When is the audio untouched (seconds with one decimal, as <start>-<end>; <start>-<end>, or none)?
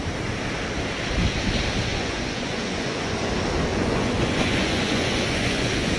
0.0-1.9; 3.3-3.7